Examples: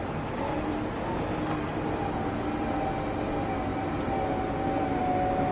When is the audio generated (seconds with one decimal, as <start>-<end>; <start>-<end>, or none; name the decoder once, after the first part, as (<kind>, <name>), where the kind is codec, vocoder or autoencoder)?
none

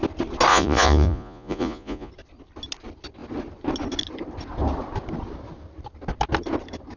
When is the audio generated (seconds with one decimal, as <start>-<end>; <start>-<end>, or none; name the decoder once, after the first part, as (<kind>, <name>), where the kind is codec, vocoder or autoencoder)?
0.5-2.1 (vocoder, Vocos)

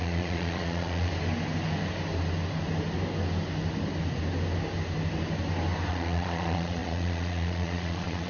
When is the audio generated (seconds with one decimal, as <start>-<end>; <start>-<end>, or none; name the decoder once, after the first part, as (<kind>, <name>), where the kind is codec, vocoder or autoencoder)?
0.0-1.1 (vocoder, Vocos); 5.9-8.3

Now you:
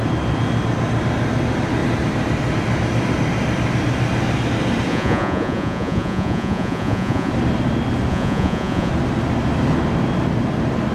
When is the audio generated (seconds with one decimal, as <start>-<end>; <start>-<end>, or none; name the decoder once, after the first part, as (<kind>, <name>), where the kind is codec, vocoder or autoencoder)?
4.9-7.3 (vocoder, Vocos); 8.1-8.9

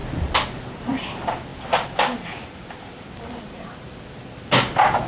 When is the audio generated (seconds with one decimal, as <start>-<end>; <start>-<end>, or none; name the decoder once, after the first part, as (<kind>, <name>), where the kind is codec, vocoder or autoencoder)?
none

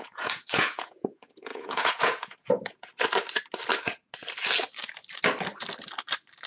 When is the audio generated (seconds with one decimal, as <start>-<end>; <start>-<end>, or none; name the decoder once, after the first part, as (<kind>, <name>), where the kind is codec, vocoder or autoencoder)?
0.0-2.9 (vocoder, Vocos)